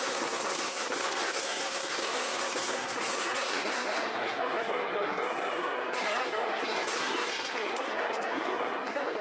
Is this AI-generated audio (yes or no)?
yes